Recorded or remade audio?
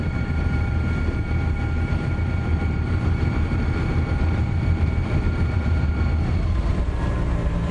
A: remade